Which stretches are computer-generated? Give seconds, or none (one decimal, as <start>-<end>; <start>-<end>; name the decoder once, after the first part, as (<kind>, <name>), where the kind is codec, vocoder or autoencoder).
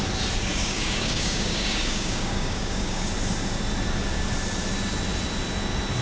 0.5-3.1 (codec, DAC)